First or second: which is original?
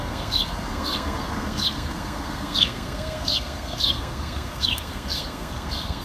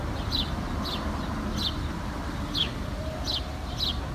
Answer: second